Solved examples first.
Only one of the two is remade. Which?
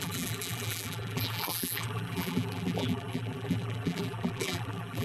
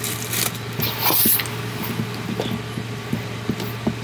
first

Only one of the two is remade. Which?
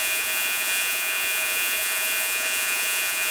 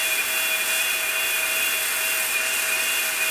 first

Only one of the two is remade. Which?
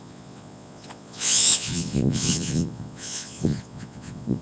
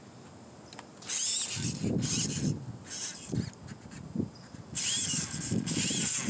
first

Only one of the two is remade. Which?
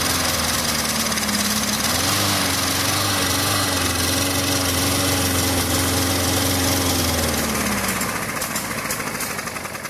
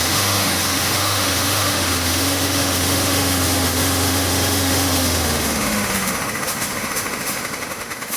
second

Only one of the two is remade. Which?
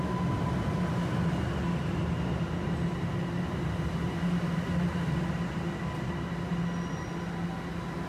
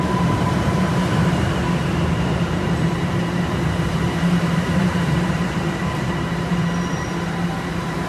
second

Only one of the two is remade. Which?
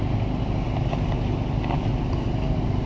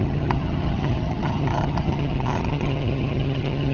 second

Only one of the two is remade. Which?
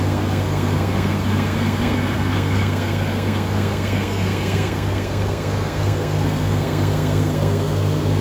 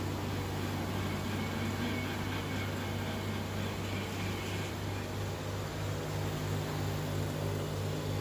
first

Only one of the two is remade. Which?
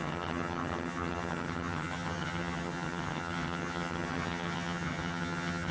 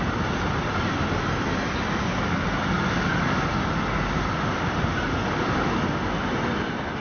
first